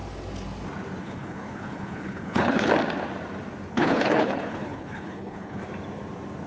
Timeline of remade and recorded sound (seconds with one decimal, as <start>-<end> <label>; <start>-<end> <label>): 0.0-1.0 recorded; 1.0-2.7 remade; 2.7-3.7 recorded; 3.7-5.6 remade; 5.6-6.5 recorded